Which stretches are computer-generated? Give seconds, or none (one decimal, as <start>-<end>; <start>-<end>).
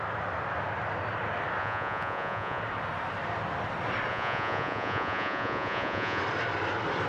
1.6-2.6; 4.1-6.2